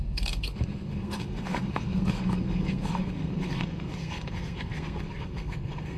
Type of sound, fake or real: fake